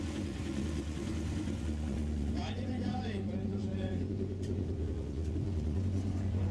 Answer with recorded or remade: remade